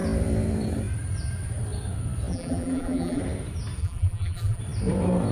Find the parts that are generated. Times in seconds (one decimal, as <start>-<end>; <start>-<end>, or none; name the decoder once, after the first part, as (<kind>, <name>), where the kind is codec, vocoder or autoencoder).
2.3-3.2 (vocoder, BigVGAN v2); 3.8-4.6